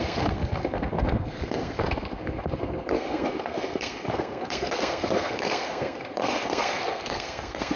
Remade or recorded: remade